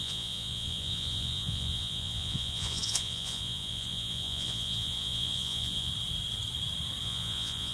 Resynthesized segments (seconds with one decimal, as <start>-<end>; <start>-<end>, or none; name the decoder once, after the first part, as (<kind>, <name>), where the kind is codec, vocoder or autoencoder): 0.0-5.9 (vocoder, Vocos); 7.0-7.7